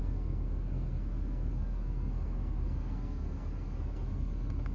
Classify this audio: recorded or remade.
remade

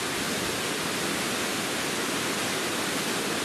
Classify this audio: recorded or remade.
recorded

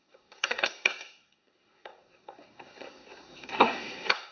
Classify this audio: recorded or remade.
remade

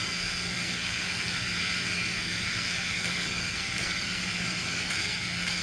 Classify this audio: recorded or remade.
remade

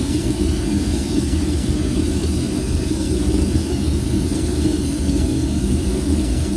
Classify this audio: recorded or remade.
remade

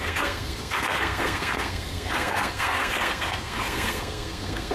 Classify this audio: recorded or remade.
remade